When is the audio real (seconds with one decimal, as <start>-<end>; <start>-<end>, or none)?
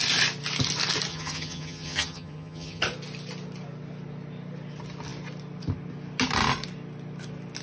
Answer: 0.0-1.1; 2.8-7.6